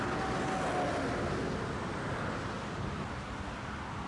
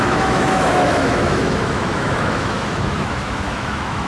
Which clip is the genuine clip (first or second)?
first